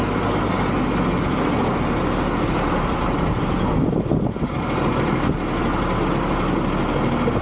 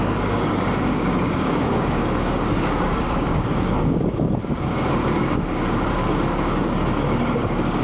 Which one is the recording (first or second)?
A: first